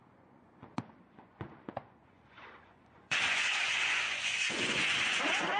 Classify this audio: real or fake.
fake